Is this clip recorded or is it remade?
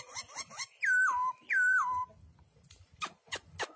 remade